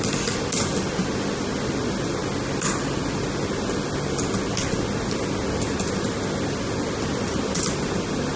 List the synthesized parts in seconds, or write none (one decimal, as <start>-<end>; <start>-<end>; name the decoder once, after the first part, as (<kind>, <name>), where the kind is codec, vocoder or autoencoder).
none